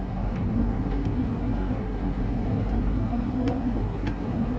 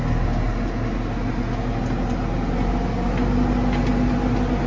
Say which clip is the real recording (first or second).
second